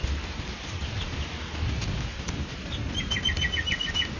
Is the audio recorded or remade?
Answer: recorded